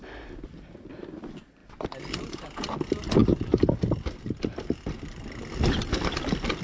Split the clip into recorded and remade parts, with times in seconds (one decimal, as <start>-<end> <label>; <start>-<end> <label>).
0.0-6.6 recorded

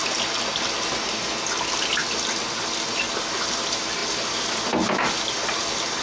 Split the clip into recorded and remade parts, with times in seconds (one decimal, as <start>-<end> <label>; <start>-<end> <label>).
0.0-6.0 recorded

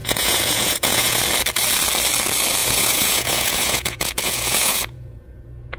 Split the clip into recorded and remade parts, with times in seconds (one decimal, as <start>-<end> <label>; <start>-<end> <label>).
0.0-1.2 remade; 1.2-2.6 recorded; 2.6-5.8 remade

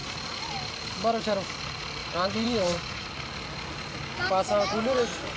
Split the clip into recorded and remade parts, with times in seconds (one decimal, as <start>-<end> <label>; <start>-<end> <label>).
0.0-2.0 recorded; 2.0-3.1 remade; 3.1-5.4 recorded